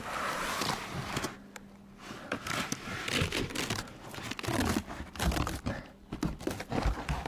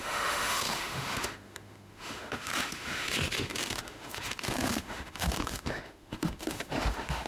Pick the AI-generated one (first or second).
second